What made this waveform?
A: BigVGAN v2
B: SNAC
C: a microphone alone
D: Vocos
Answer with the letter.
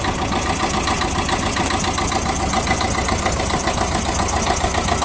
C